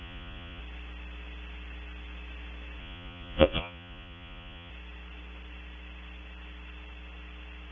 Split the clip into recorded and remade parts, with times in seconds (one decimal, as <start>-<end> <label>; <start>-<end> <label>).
0.0-0.6 remade; 0.6-2.8 recorded; 2.8-4.7 remade; 4.7-7.7 recorded